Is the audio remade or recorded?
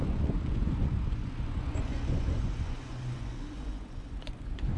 remade